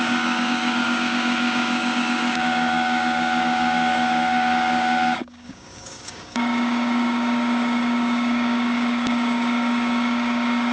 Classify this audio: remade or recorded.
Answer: remade